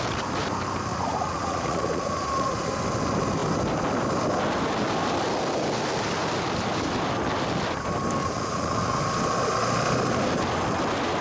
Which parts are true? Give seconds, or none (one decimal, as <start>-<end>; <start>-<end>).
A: 0.0-0.9; 2.7-8.2; 9.0-11.2